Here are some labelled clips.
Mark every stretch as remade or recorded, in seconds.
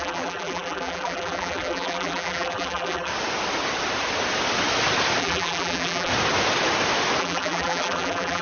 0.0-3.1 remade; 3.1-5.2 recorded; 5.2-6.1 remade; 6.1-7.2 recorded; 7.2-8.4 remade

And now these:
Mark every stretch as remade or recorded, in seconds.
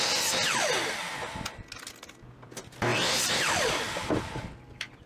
0.0-2.9 recorded; 2.9-5.1 remade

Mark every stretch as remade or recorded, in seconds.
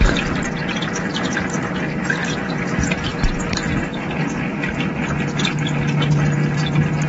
0.0-3.1 recorded; 3.1-4.1 remade; 4.1-7.1 recorded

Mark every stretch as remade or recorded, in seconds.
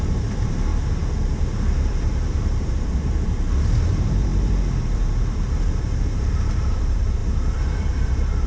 0.0-0.7 remade; 0.7-1.3 recorded; 1.3-4.3 remade; 4.3-4.8 recorded; 4.8-8.5 remade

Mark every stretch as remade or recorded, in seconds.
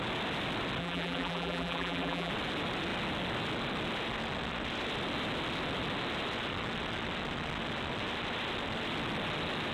0.0-0.8 recorded; 0.8-2.3 remade; 2.3-9.7 recorded